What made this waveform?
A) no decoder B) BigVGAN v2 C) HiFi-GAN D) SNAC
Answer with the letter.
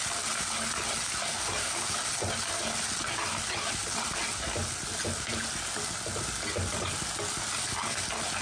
A